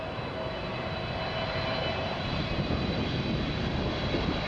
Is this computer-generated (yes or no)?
no